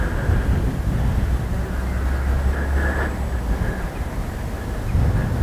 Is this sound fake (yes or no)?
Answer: no